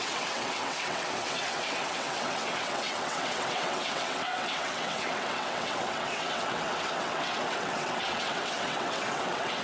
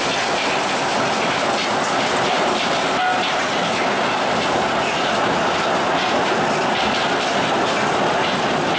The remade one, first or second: first